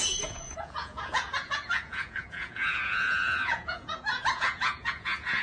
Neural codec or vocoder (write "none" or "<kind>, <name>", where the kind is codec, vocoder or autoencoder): vocoder, Vocos